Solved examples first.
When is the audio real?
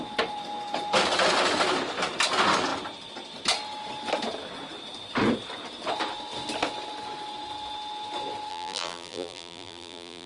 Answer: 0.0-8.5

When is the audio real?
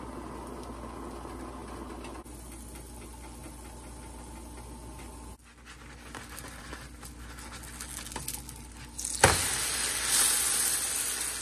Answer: 0.0-11.4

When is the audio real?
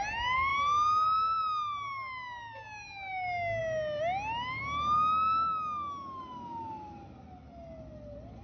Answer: 0.0-8.4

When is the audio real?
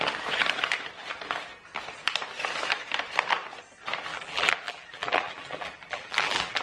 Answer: 0.0-4.1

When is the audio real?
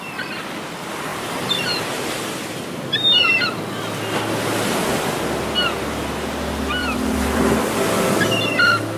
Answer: 0.0-1.1; 3.6-6.8; 7.4-9.0